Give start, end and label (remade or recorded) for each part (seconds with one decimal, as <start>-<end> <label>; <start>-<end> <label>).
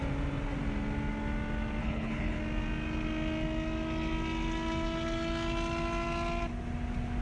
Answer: 0.0-1.8 recorded; 1.8-2.4 remade; 2.4-7.2 recorded